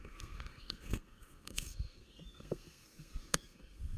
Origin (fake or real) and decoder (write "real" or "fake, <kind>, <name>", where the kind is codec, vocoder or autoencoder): fake, codec, SNAC